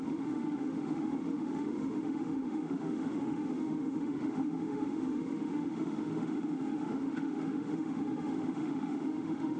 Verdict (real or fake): fake